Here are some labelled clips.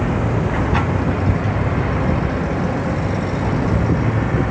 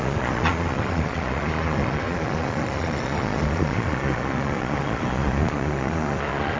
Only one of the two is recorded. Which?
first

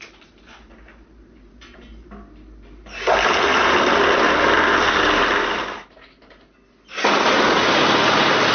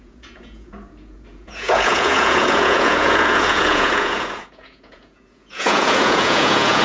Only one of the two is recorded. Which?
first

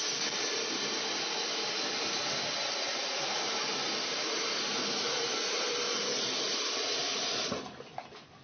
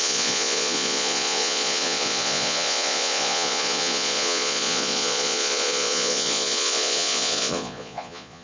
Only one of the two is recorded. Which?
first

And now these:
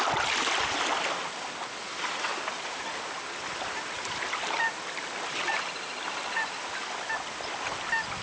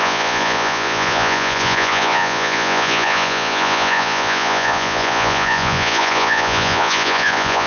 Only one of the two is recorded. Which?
first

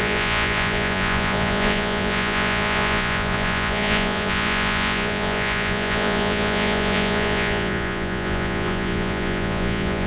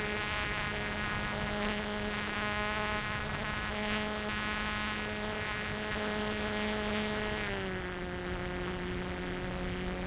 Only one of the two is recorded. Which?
second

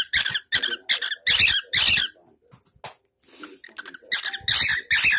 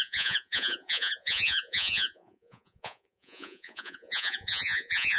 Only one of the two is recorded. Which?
first